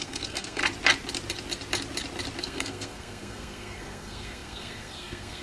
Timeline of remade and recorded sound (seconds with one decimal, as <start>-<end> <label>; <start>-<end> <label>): 0.0-0.6 remade; 0.6-2.4 recorded; 2.4-5.4 remade